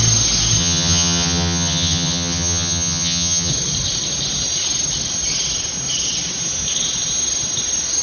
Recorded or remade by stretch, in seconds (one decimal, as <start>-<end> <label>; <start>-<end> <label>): 0.0-0.6 recorded; 0.6-3.5 remade; 3.5-8.0 recorded